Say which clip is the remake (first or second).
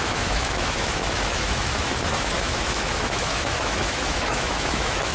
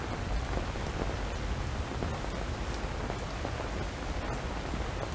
first